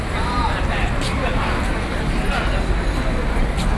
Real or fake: real